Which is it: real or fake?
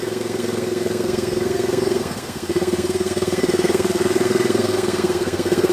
fake